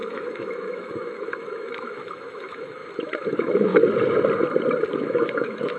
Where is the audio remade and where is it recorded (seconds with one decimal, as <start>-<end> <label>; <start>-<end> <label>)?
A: 0.0-2.8 remade; 2.8-3.3 recorded; 3.3-3.7 remade; 3.7-4.9 recorded; 4.9-5.8 remade